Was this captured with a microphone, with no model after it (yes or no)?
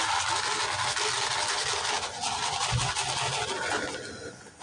yes